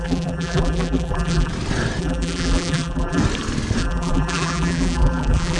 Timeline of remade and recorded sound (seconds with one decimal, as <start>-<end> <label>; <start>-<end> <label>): 0.0-1.5 remade; 1.5-2.0 recorded; 2.0-3.2 remade; 3.2-3.8 recorded; 3.8-5.6 remade